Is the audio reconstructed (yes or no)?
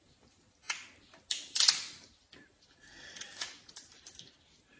no